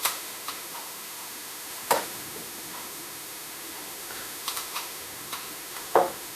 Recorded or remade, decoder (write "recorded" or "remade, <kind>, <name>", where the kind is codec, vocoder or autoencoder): remade, autoencoder, DAC-VAE